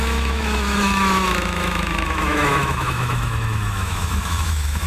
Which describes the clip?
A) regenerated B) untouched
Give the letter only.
A